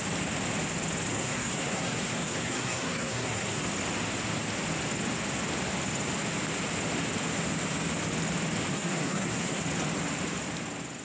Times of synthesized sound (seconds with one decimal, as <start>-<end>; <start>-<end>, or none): 1.1-3.6; 8.7-9.6